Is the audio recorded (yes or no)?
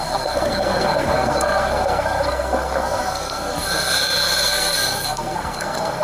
no